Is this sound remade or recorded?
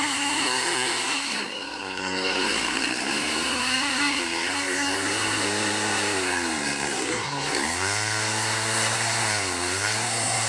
remade